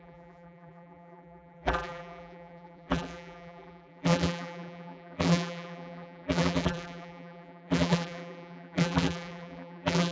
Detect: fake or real fake